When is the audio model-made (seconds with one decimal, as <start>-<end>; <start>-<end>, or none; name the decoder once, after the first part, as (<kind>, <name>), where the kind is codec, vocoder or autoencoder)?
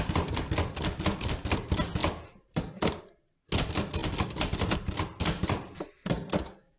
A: 2.0-3.0 (vocoder, BigVGAN v2); 4.0-4.7; 5.4-6.8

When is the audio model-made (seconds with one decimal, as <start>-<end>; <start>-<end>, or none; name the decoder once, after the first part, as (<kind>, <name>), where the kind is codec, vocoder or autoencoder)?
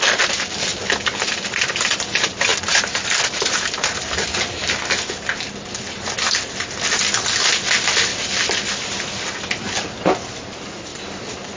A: 8.1-9.3 (vocoder, BigVGAN v2); 10.9-11.6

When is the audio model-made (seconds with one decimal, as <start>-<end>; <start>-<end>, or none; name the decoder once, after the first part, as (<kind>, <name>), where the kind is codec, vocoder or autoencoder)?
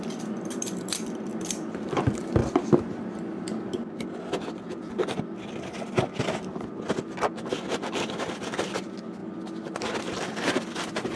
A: 0.0-2.4 (vocoder, BigVGAN v2); 3.4-9.2; 10.0-11.2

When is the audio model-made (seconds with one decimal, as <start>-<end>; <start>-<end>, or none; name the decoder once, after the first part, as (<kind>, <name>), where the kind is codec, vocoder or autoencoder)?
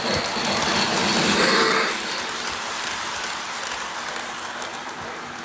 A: 1.0-2.1 (vocoder, BigVGAN v2); 4.7-5.4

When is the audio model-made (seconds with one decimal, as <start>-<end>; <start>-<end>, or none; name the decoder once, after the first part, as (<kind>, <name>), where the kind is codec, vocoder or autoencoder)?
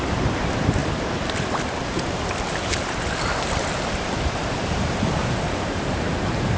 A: 0.0-6.6 (vocoder, BigVGAN v2)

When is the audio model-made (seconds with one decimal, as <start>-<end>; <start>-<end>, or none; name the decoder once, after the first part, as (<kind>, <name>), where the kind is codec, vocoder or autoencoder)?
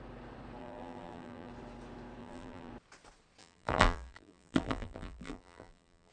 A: 0.6-1.5 (vocoder, BigVGAN v2); 2.2-2.7; 3.4-6.1